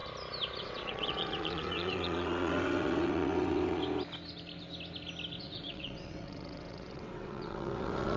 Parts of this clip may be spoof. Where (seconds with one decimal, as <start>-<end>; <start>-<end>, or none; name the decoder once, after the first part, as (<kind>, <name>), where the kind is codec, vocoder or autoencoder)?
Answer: 0.6-3.8 (vocoder, WaveNeXt); 5.4-8.2